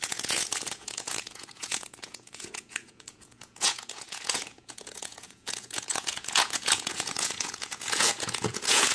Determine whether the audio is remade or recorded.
remade